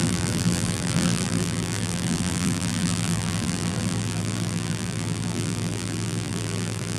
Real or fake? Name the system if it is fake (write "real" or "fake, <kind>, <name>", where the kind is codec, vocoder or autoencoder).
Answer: fake, vocoder, BigVGAN v2